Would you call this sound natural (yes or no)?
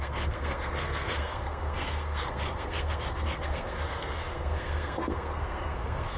no